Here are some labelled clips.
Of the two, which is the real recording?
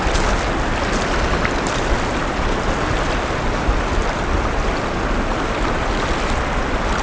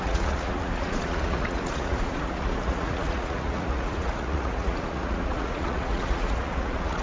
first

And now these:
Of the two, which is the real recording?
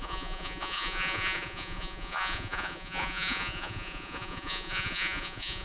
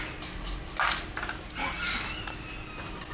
second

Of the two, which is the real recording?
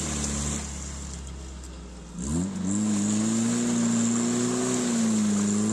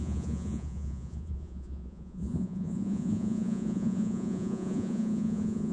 first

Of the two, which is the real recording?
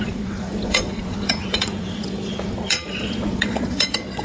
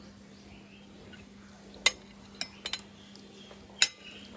second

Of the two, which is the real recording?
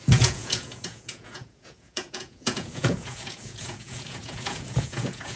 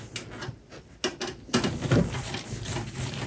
second